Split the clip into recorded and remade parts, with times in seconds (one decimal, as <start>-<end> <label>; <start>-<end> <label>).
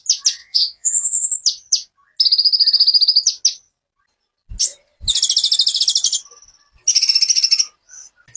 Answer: 0.0-0.4 recorded; 0.4-1.3 remade; 1.3-8.4 recorded